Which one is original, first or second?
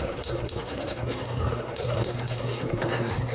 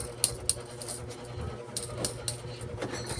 second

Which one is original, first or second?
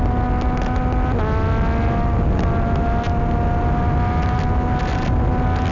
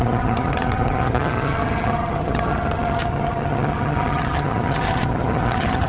first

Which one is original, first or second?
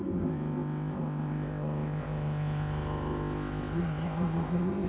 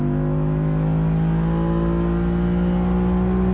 second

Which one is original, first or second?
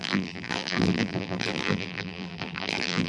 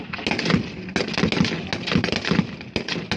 second